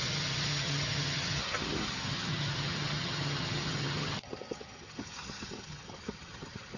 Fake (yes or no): yes